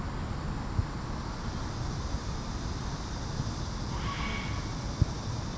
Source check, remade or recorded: recorded